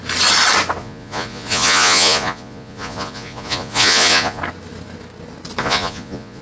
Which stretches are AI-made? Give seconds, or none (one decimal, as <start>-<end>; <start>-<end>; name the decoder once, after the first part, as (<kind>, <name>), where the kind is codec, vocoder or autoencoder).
0.8-4.4 (vocoder, Vocos); 5.6-6.4